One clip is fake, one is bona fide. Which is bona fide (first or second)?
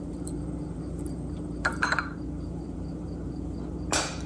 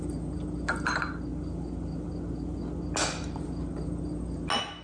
second